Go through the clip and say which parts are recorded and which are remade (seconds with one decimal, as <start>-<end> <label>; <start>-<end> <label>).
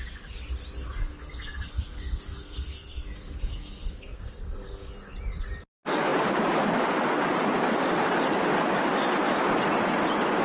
0.0-1.0 recorded; 1.0-4.9 remade; 4.9-10.4 recorded